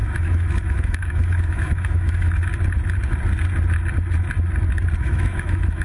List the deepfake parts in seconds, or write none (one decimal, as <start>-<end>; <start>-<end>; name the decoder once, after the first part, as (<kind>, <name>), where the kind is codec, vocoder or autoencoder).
0.0-2.5 (autoencoder, DAC-VAE); 5.0-5.8

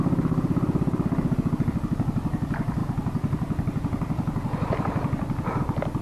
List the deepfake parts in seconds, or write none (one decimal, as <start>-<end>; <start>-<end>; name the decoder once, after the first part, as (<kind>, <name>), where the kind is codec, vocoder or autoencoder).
2.8-5.6 (vocoder, BigVGAN v2)

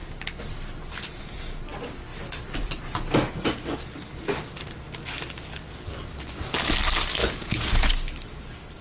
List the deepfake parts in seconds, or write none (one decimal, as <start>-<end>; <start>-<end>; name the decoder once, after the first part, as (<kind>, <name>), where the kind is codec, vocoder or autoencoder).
7.2-7.9 (vocoder, Vocos)